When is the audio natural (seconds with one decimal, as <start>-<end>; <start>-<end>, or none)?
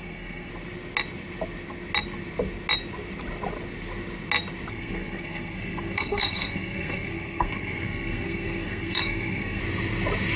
0.5-4.7; 9.6-10.4